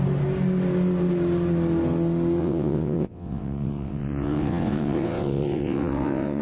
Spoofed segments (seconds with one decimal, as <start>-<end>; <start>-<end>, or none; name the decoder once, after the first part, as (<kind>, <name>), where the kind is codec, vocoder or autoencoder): 2.4-6.4 (vocoder, WaveNeXt)